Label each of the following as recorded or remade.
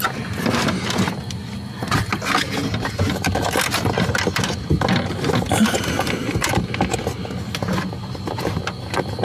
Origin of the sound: recorded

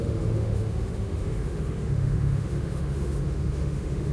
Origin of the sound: remade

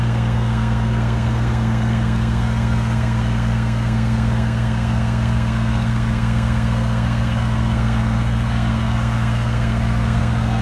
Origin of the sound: remade